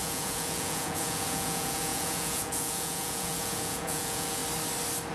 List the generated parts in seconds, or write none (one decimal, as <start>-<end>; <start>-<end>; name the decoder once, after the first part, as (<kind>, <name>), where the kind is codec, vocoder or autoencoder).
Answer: 0.0-4.4 (vocoder, Vocos)